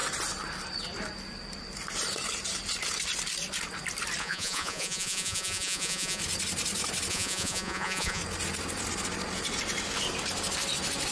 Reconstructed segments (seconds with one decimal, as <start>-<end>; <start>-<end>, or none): 4.2-6.2; 7.1-8.2